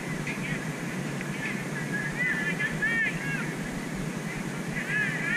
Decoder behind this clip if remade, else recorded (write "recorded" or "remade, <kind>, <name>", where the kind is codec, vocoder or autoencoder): recorded